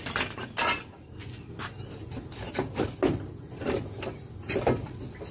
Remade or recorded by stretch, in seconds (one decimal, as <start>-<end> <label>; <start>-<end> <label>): 0.0-5.3 recorded